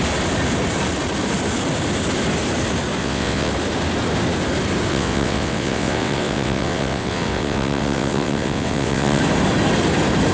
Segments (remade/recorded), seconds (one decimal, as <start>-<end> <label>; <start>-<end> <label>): 0.0-3.0 recorded; 3.0-3.5 remade; 3.5-4.9 recorded; 4.9-9.2 remade; 9.2-10.3 recorded

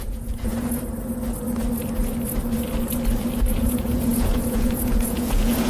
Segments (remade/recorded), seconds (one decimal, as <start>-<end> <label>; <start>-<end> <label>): 0.0-0.5 remade; 0.5-3.5 recorded; 3.5-5.7 remade

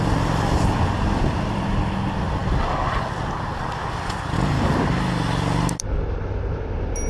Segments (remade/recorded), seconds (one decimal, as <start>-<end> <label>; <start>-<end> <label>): 0.0-7.1 recorded